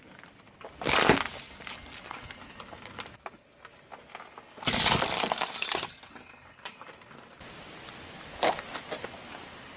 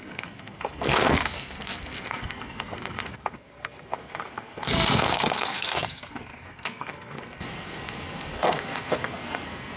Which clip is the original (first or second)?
first